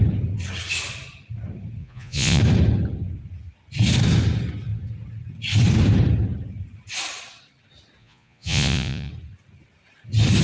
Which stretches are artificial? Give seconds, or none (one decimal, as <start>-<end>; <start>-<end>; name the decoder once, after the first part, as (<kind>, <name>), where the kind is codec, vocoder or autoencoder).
1.8-2.4 (vocoder, Vocos); 8.0-9.1